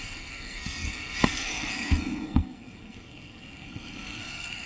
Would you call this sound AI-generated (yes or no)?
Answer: yes